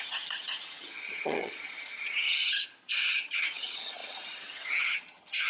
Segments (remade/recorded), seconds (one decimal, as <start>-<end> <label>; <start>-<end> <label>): 0.0-2.6 remade; 2.6-3.1 recorded; 3.1-5.5 remade